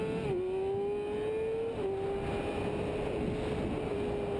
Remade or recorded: recorded